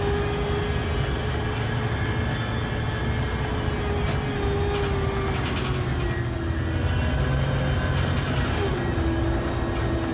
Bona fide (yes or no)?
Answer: yes